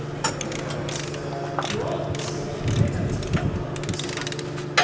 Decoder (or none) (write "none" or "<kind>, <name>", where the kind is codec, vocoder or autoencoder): none